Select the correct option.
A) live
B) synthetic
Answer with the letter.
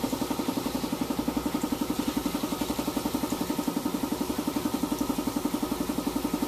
A